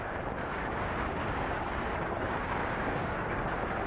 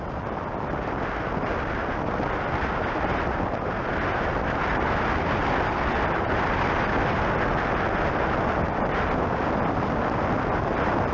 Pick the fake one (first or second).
first